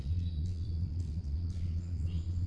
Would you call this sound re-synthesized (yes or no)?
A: yes